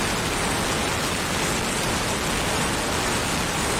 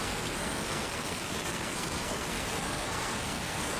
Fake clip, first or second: second